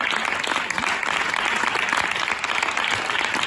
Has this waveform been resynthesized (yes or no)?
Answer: no